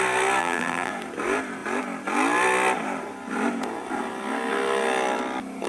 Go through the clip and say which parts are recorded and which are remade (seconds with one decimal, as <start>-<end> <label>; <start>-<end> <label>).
0.0-0.4 recorded; 0.4-0.9 remade; 0.9-5.7 recorded